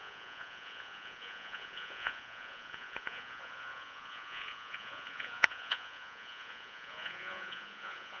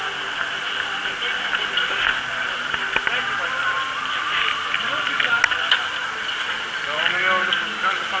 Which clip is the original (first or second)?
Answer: second